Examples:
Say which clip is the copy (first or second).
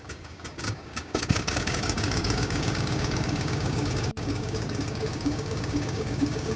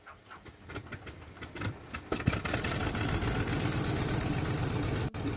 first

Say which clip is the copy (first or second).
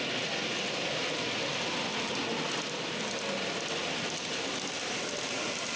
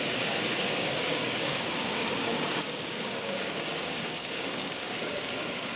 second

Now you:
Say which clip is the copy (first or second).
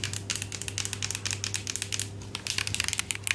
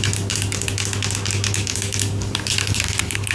second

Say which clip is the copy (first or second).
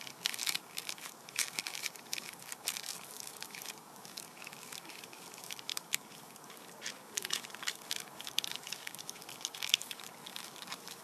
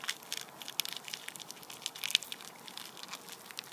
first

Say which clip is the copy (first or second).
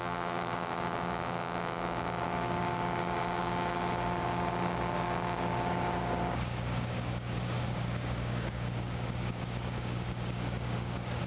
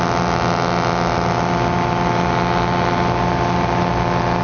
first